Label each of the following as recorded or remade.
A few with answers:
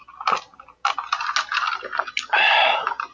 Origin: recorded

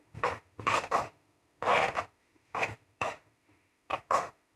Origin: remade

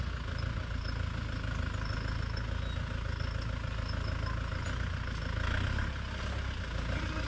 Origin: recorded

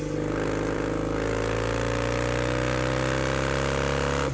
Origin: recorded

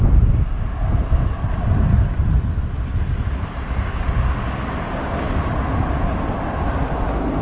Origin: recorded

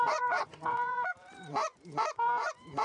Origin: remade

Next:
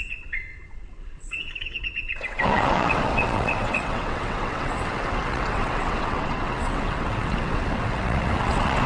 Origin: remade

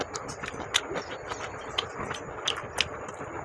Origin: recorded